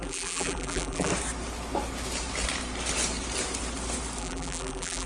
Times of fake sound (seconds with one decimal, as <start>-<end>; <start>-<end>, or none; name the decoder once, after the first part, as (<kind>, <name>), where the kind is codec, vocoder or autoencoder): 0.0-1.1 (vocoder, BigVGAN v2); 4.2-5.1